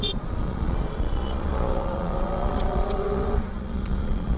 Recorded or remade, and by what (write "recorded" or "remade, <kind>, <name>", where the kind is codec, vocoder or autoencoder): remade, vocoder, Vocos